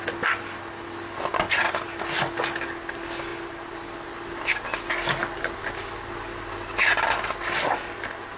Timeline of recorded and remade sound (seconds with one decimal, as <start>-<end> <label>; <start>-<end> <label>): 0.0-8.4 recorded